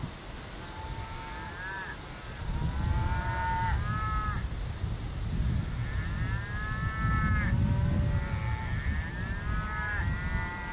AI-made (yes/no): no